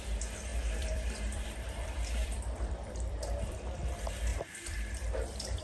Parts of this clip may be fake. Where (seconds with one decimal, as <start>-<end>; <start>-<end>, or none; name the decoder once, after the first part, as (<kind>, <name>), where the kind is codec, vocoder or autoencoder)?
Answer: 0.5-3.9 (vocoder, BigVGAN v2); 4.3-5.6